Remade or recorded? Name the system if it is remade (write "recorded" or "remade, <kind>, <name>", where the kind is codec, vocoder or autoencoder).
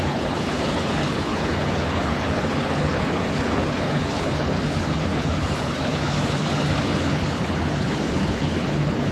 remade, codec, HILCodec